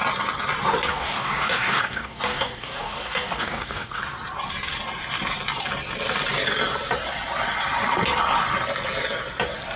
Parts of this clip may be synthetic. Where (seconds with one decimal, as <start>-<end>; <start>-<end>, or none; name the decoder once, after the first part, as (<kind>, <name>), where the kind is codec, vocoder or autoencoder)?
0.9-4.0 (codec, DAC)